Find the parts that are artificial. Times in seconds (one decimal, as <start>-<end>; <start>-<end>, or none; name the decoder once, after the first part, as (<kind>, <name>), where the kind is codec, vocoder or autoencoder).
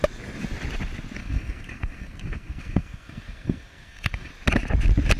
1.2-4.3 (codec, SNAC)